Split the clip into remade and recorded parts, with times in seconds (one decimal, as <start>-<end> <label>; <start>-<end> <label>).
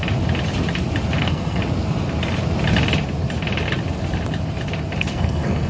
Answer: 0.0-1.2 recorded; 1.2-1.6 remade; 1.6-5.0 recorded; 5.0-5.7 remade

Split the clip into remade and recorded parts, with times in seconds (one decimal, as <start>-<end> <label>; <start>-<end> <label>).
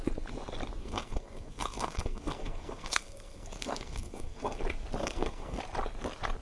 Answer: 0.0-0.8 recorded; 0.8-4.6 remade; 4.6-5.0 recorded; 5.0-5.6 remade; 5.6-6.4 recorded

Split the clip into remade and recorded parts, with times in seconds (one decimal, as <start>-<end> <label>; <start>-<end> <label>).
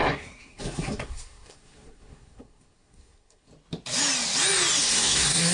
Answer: 0.0-3.5 remade; 3.5-4.8 recorded; 4.8-5.5 remade